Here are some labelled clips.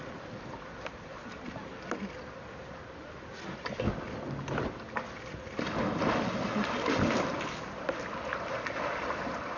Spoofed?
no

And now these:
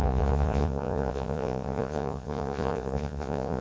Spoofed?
yes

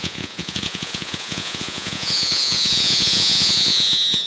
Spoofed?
yes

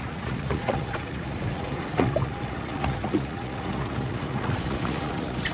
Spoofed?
yes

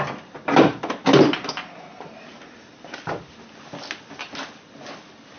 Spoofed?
no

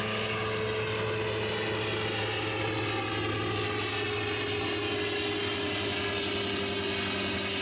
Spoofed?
no